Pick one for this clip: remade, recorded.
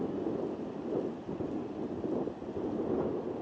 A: recorded